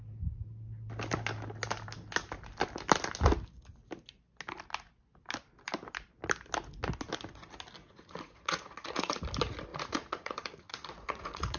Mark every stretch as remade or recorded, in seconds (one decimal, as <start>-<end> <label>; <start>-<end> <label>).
0.0-7.8 recorded; 7.8-9.2 remade; 9.2-9.7 recorded; 9.7-11.6 remade